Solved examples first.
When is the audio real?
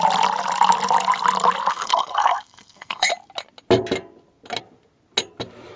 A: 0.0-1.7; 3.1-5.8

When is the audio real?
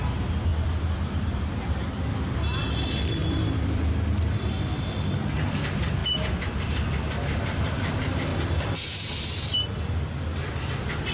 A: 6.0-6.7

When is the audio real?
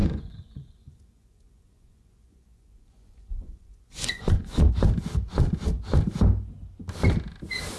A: 4.7-7.8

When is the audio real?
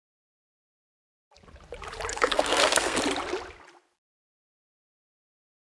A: 0.0-2.1; 3.0-5.7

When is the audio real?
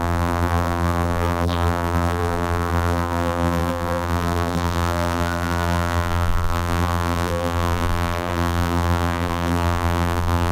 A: none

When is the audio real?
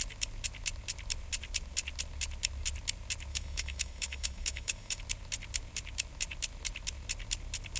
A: 0.0-3.3; 5.0-7.8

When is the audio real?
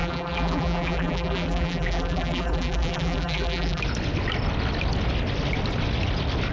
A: 3.8-6.5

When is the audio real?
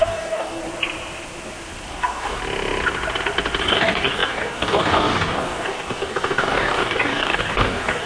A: 0.6-1.9; 2.4-3.6